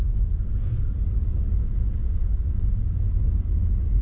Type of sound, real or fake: real